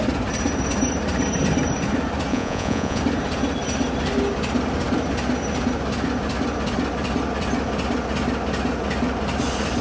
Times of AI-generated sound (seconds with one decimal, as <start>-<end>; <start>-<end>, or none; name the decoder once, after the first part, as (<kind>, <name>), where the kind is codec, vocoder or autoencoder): 2.3-3.0 (vocoder, Vocos)